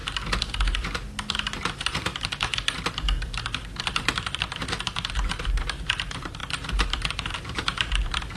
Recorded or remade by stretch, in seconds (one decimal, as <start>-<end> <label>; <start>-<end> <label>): 0.0-1.4 recorded; 1.4-2.5 remade; 2.5-3.8 recorded; 3.8-8.4 remade

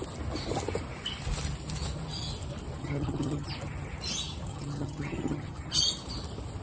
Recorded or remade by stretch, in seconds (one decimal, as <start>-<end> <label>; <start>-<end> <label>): 0.0-2.8 recorded; 2.8-3.5 remade; 3.5-4.5 recorded; 4.5-5.8 remade; 5.8-6.6 recorded

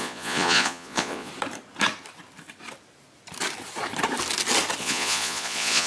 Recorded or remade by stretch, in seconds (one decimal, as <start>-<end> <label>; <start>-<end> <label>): 0.0-1.3 remade; 1.3-4.8 recorded; 4.8-5.9 remade

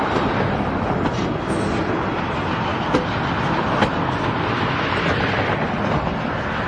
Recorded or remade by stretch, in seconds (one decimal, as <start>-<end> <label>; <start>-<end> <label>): 0.0-6.7 recorded

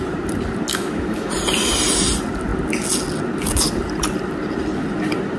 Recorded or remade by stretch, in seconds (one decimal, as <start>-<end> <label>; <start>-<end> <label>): 0.0-0.7 recorded; 0.7-1.3 remade; 1.3-5.4 recorded

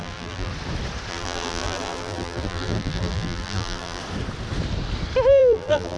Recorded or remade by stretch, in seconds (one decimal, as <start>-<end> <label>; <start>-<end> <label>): 0.0-0.5 remade; 0.5-1.1 recorded; 1.1-4.0 remade; 4.0-5.3 recorded; 5.3-6.0 remade